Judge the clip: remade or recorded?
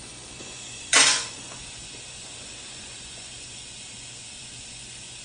remade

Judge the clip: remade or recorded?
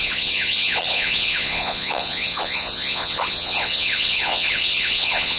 remade